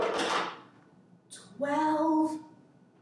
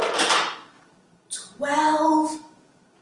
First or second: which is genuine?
first